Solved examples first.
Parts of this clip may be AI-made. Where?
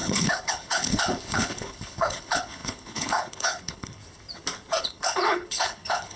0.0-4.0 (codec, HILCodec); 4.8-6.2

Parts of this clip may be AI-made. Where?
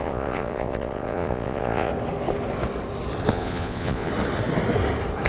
0.0-1.9 (vocoder, Vocos); 3.3-4.1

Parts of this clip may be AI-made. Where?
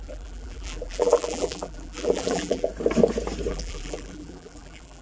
0.0-2.7 (vocoder, BigVGAN v2); 3.5-5.0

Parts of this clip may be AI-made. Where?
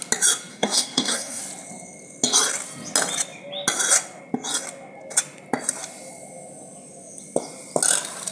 0.5-1.4 (codec, SNAC)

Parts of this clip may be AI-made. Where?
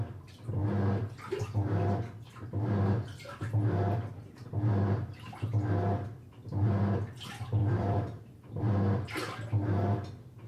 7.6-8.6 (vocoder, BigVGAN v2)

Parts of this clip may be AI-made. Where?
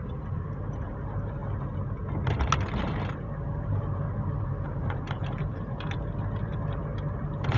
0.0-1.4 (vocoder, BigVGAN v2); 2.8-7.6